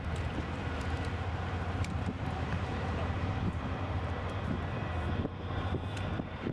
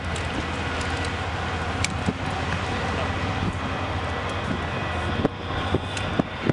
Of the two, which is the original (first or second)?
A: second